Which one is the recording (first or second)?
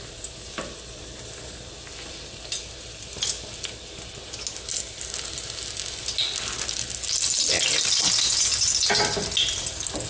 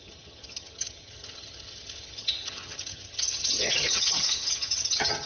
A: first